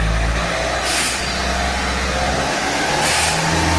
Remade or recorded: recorded